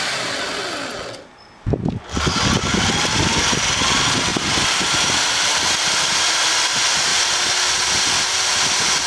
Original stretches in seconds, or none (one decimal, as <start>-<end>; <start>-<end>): 0.0-4.3; 5.3-9.1